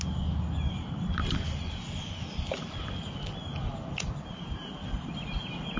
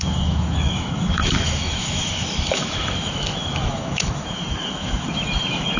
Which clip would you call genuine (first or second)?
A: first